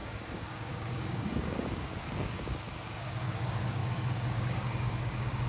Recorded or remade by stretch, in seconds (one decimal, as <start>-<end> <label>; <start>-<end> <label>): 0.0-5.5 remade